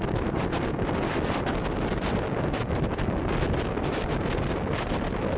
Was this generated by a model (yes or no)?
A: no